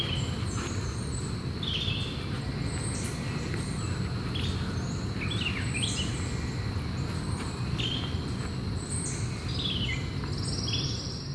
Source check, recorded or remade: recorded